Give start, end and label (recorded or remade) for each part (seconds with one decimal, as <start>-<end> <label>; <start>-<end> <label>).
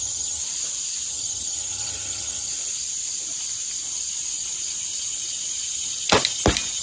0.0-0.4 remade; 0.4-1.1 recorded; 1.1-2.5 remade; 2.5-6.8 recorded